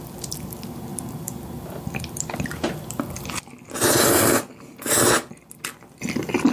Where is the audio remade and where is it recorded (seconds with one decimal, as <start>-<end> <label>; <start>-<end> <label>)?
0.0-6.5 recorded